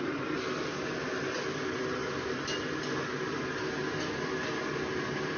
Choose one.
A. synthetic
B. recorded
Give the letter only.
B